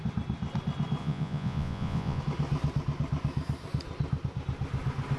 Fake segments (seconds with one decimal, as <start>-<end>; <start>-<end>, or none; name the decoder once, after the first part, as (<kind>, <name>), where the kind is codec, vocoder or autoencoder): 1.0-2.2 (vocoder, Vocos)